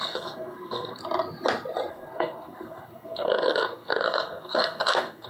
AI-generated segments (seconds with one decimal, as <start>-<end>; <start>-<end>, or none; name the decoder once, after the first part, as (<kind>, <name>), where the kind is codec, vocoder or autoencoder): 0.0-1.0 (codec, SNAC); 1.9-5.3